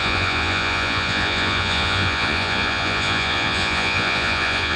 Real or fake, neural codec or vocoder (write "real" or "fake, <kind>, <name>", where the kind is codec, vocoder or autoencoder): fake, vocoder, Vocos